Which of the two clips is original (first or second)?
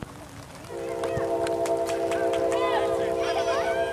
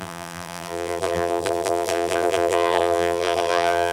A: first